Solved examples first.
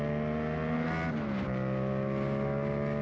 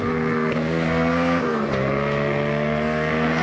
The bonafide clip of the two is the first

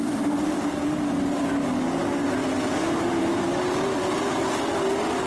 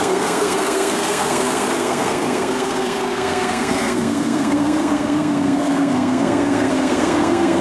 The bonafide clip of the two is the first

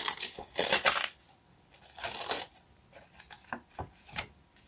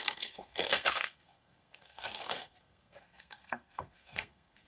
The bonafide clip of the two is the first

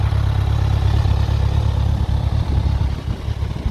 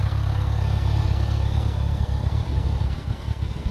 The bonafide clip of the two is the first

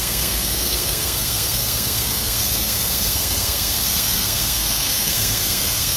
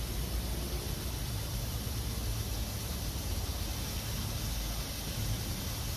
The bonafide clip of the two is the second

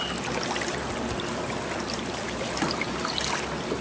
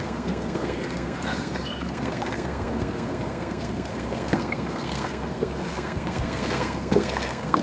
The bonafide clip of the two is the first